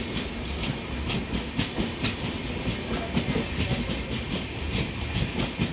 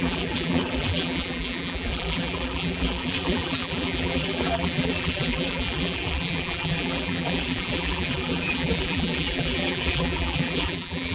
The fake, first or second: second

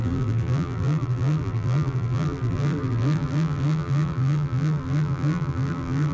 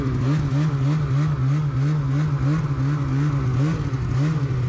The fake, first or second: first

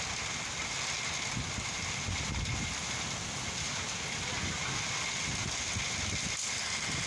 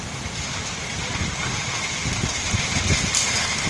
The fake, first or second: second